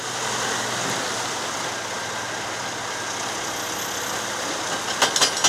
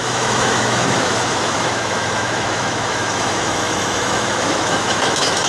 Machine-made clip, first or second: second